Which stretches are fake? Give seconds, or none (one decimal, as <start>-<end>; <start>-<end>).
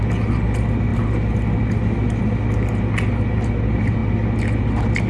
none